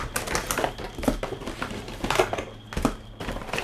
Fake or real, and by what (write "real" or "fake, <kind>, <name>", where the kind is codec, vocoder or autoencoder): real